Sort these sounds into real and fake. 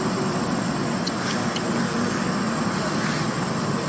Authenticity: real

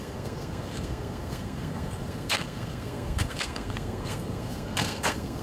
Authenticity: fake